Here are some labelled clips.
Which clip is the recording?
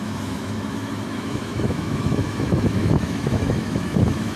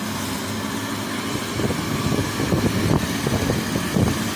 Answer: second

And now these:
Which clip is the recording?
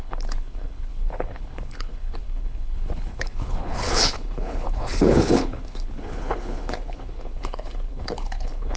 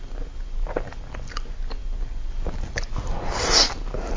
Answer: second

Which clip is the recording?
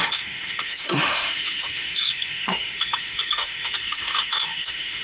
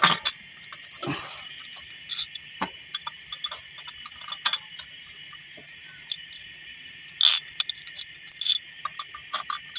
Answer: second